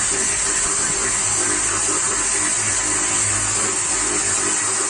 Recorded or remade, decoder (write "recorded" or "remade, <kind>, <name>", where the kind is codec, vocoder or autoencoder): recorded